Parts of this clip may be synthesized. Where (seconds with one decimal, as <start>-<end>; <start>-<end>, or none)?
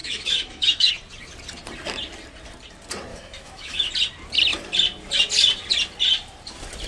0.0-0.9; 3.1-3.9